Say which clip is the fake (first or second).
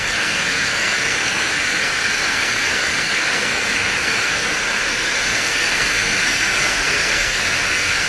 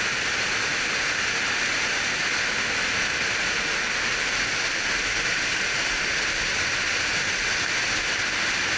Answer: first